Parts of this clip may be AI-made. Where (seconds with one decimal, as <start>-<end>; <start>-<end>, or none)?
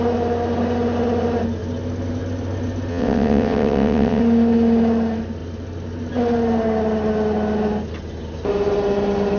2.9-4.2